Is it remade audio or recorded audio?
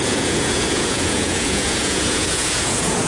remade